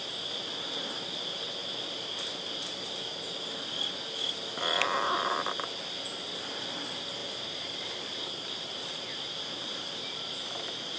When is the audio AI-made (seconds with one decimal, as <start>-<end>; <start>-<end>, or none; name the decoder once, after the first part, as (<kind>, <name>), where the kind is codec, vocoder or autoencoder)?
none

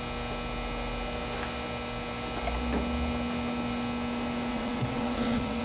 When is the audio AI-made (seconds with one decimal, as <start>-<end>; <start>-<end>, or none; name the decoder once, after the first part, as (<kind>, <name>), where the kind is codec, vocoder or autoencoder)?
4.5-5.6 (vocoder, WaveNeXt)

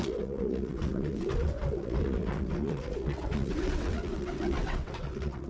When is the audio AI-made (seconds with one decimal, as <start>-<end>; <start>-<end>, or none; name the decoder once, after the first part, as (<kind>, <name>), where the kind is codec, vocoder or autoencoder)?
0.0-5.5 (vocoder, WaveNeXt)

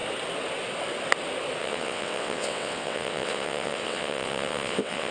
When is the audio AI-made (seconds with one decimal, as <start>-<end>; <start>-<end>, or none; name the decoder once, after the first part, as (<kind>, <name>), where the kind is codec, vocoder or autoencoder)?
1.6-5.1 (vocoder, WaveNeXt)

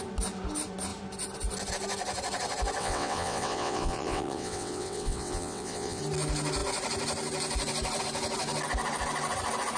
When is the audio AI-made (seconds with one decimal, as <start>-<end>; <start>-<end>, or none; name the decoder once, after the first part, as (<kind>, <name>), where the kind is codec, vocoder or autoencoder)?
2.8-6.0 (vocoder, WaveNeXt)

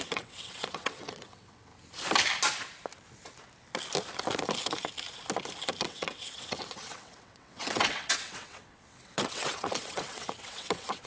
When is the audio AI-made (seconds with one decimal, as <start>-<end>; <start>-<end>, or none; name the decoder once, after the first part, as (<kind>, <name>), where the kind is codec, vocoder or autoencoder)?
0.0-1.7 (vocoder, WaveNeXt); 5.8-11.1

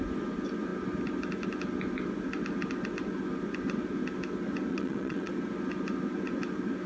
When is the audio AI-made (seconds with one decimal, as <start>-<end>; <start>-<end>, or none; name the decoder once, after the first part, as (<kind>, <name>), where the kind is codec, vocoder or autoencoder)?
4.7-5.3 (vocoder, WaveNeXt)

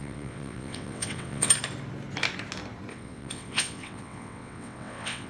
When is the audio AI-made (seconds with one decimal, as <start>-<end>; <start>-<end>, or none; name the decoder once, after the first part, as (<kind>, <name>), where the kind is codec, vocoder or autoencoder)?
0.0-1.5 (vocoder, WaveNeXt); 2.9-5.3